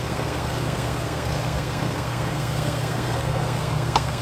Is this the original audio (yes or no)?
no